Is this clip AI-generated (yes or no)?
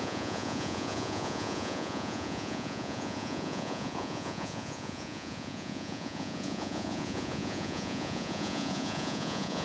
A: yes